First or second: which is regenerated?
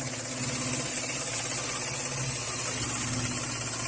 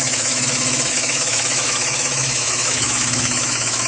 second